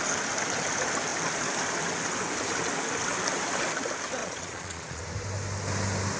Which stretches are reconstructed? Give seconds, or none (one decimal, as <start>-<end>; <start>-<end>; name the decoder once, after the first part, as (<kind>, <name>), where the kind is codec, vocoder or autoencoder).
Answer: 4.2-5.0 (vocoder, Vocos)